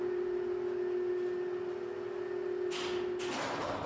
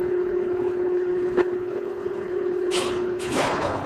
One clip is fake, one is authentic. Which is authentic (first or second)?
first